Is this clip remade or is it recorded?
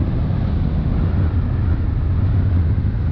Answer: recorded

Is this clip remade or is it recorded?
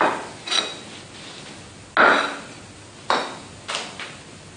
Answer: recorded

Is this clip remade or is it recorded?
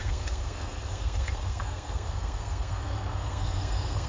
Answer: remade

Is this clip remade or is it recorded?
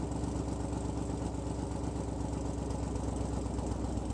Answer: recorded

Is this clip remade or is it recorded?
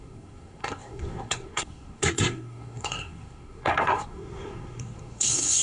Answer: remade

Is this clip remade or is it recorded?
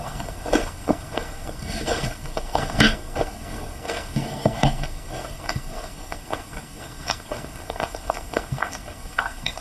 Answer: remade